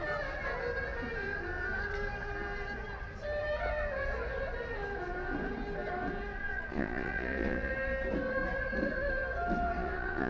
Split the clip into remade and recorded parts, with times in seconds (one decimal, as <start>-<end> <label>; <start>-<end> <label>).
0.0-6.4 recorded; 6.4-7.7 remade; 7.7-9.8 recorded; 9.8-10.3 remade